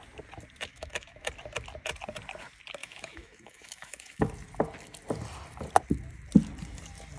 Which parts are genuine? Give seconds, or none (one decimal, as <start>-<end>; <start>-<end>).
0.0-0.7; 1.3-2.8; 4.3-7.2